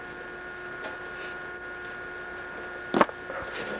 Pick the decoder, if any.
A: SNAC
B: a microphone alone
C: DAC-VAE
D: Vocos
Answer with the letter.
B